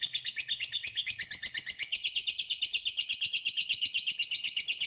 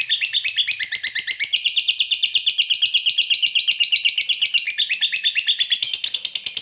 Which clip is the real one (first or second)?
second